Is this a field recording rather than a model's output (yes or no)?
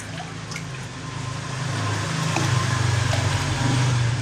yes